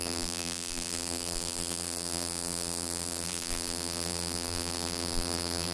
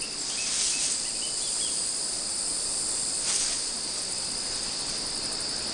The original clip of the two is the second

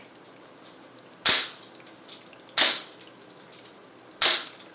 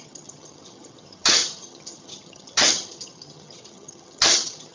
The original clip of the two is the first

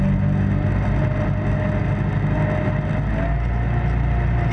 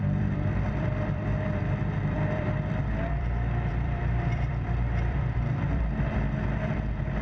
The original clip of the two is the first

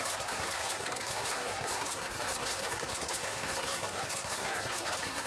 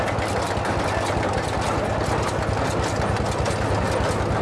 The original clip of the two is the second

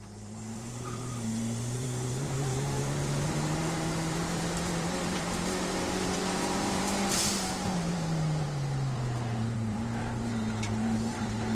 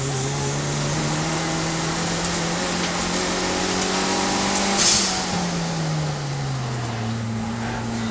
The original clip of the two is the second